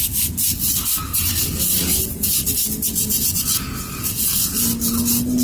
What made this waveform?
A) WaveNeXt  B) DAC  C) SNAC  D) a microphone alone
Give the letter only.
D